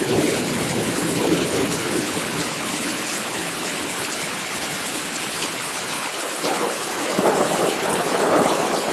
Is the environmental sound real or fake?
fake